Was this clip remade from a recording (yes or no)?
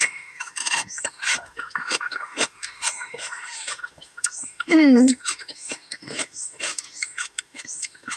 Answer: yes